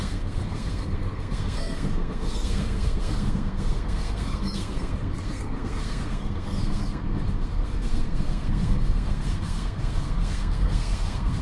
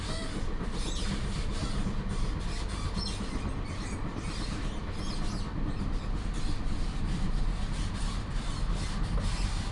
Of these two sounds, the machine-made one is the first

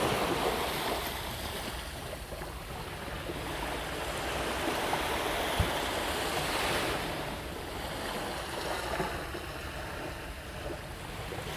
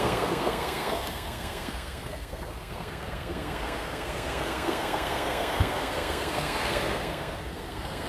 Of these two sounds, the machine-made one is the second